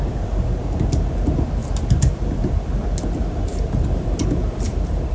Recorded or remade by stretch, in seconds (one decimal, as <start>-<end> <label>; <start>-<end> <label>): 0.0-5.1 recorded